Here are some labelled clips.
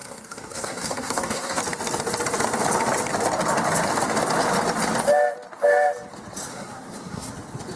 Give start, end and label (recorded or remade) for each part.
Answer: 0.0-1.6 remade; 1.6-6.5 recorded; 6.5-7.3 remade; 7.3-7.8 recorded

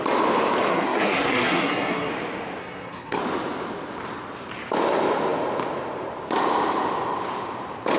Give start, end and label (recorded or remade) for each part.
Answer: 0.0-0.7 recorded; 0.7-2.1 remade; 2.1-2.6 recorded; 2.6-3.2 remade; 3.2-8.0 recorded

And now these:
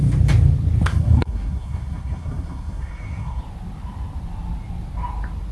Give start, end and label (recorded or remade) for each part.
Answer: 0.0-0.9 recorded; 0.9-3.4 remade; 3.4-5.5 recorded